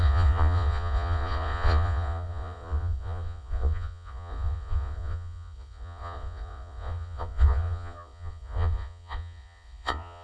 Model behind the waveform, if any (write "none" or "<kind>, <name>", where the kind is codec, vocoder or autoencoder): vocoder, Vocos